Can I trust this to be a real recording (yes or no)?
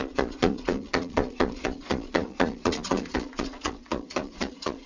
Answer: no